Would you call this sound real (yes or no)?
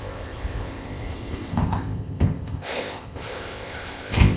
no